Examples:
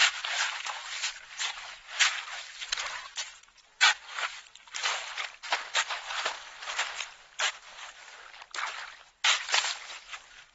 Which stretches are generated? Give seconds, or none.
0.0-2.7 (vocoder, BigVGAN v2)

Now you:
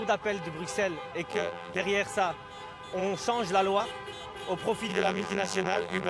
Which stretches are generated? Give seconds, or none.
1.3-1.8 (vocoder, BigVGAN v2); 4.9-6.1